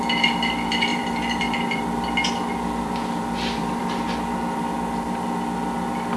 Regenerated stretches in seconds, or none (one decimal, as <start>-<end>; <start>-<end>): 0.9-4.6